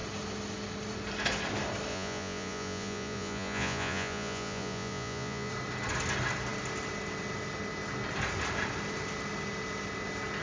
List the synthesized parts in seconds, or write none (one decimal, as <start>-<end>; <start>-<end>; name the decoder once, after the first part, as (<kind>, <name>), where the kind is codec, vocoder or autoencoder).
1.9-5.5 (vocoder, Vocos)